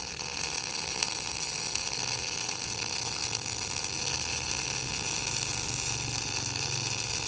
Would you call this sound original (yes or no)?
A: yes